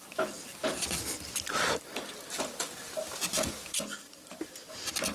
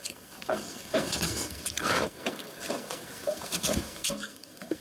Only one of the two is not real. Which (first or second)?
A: second